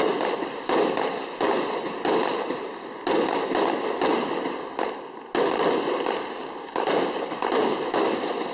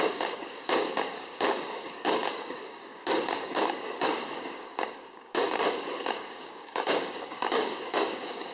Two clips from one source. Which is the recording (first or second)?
first